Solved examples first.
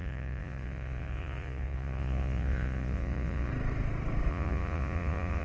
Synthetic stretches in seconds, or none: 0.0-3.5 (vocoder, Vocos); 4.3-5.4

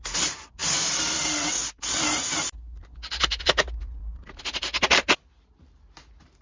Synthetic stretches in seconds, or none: none

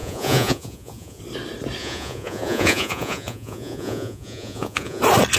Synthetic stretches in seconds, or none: 0.0-1.2 (vocoder, Vocos); 1.8-5.0